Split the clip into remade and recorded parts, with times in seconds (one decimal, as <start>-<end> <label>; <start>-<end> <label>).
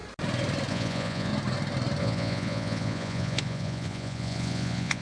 0.0-0.7 recorded; 0.7-1.3 remade; 1.3-2.0 recorded; 2.0-5.0 remade